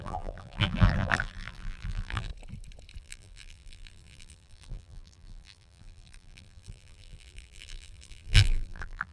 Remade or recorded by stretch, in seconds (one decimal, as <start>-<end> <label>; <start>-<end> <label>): 0.0-2.3 remade; 2.3-3.0 recorded; 3.0-9.1 remade